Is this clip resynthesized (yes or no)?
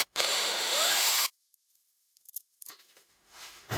yes